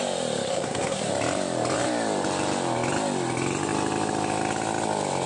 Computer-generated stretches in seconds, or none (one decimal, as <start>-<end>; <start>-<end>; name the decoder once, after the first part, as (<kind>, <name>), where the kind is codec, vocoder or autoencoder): 0.5-1.1 (codec, SNAC)